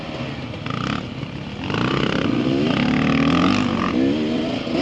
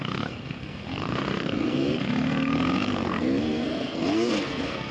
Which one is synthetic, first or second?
second